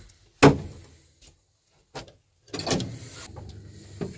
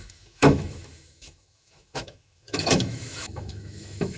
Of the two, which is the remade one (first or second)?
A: second